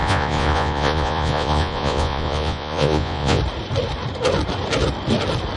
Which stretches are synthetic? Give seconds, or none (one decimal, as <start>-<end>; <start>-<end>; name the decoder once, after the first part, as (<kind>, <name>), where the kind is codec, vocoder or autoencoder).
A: 0.0-3.4 (vocoder, Vocos)

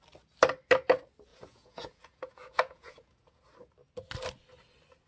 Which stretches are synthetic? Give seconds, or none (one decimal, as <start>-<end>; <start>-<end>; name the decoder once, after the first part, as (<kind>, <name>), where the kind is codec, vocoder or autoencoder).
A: 1.3-3.4 (vocoder, Vocos)

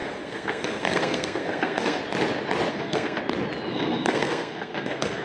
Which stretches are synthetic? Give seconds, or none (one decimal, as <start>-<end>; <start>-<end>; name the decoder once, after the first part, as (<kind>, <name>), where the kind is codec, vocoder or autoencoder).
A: 0.0-2.0 (codec, SNAC); 2.7-3.2; 3.7-5.2

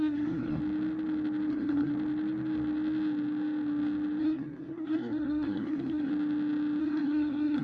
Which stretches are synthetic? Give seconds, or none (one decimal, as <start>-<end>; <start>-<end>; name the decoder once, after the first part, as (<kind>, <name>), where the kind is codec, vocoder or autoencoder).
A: 0.0-0.6 (codec, SNAC); 1.5-1.9; 4.2-6.1; 6.8-7.6

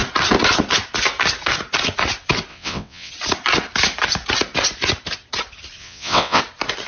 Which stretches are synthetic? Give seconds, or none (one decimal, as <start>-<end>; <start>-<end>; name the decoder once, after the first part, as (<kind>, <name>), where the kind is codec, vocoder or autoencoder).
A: 2.5-3.1 (vocoder, WaveNeXt); 5.8-6.4

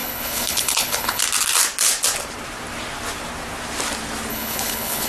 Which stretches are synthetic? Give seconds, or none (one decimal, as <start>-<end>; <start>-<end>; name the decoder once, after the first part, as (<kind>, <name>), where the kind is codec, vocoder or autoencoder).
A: 0.0-1.2 (codec, HILCodec); 4.3-5.1

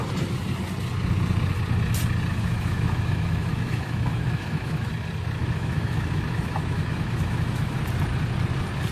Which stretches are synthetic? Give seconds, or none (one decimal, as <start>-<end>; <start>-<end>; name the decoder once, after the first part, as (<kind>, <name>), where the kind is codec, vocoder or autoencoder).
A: 2.3-4.9 (autoencoder, DAC-VAE); 5.4-7.8